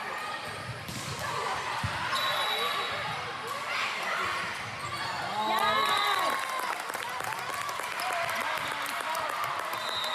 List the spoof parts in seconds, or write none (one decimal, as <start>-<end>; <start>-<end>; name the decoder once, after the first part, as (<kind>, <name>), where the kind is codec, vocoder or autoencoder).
none